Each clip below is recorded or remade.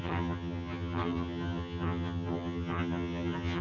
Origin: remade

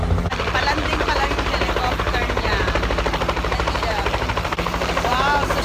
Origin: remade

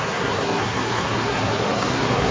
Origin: remade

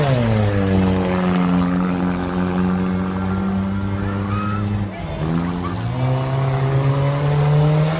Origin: recorded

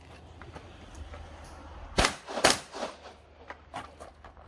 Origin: recorded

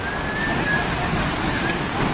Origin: recorded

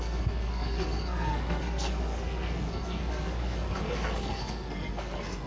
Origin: remade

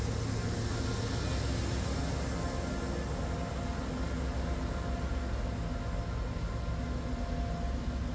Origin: recorded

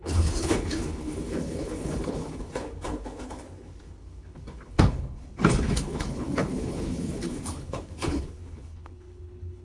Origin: remade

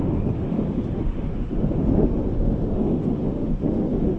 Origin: remade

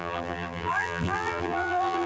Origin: remade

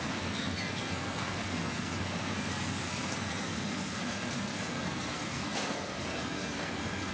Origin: remade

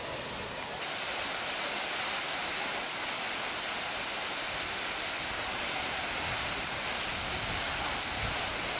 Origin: recorded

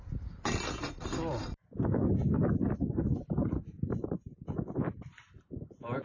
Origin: recorded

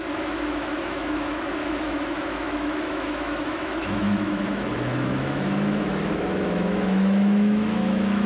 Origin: remade